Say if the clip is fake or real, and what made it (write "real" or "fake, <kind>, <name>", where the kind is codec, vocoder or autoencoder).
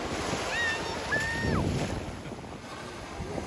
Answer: real